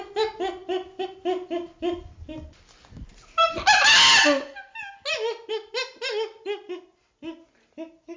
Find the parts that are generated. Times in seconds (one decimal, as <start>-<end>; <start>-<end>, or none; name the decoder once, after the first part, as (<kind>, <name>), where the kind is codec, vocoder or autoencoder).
none